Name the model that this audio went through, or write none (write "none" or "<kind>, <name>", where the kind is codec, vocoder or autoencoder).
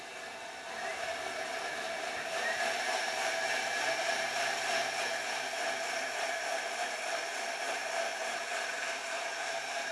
vocoder, BigVGAN v2